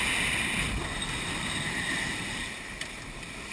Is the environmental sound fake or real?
real